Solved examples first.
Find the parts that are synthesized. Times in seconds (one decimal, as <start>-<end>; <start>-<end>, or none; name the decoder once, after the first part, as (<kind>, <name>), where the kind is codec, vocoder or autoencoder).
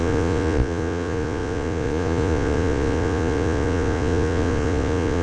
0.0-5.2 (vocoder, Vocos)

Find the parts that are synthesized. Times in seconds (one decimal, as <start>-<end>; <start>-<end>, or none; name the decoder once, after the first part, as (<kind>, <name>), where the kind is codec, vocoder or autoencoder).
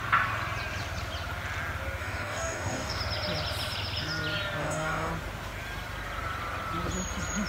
2.0-3.0 (codec, DAC); 4.6-5.1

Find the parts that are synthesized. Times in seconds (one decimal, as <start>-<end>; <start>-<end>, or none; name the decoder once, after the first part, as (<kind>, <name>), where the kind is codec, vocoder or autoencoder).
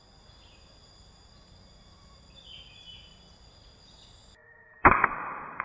4.4-5.6 (vocoder, BigVGAN v2)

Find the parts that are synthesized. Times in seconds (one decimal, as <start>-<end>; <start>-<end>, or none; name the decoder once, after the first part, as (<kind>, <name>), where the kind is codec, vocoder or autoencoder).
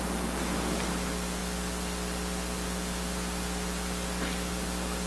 none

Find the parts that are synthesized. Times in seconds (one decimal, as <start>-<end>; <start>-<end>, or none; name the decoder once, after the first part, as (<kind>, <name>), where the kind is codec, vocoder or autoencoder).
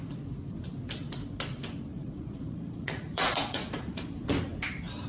1.9-4.0 (vocoder, Vocos)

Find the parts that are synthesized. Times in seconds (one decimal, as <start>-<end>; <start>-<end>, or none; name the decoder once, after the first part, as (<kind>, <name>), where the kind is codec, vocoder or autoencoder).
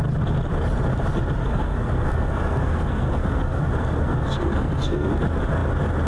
1.4-5.1 (codec, SNAC)